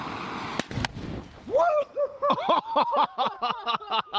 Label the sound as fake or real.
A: real